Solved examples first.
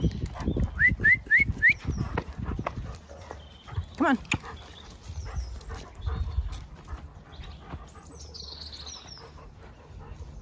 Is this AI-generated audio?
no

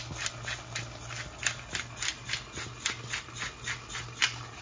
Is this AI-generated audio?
no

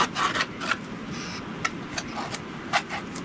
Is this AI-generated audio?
no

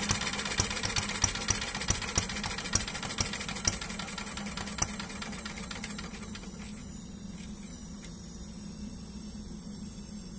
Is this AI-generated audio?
no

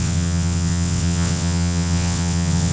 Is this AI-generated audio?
yes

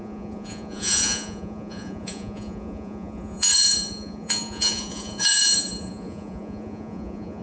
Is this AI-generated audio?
yes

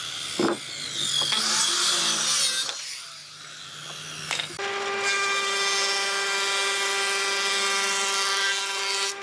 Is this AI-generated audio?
no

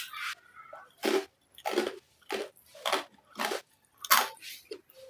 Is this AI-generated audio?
no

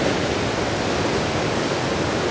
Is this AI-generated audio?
no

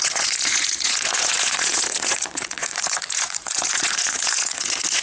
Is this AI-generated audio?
yes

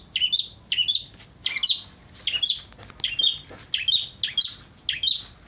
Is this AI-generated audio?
no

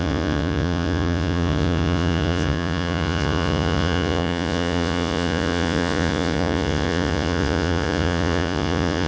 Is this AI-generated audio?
yes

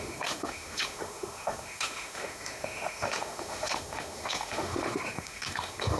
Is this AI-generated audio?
yes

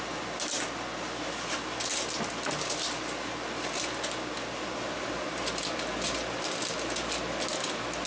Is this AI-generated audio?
no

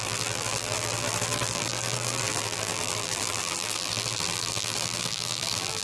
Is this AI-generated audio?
yes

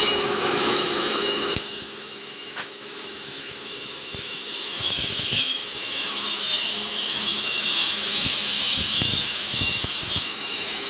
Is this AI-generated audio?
yes